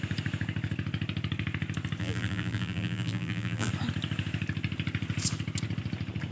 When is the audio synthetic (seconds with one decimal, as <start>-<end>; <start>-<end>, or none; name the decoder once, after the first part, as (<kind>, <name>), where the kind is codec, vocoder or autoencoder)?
2.0-3.7 (vocoder, BigVGAN v2)